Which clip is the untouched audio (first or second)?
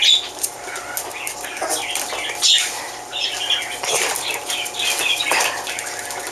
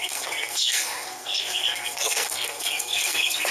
first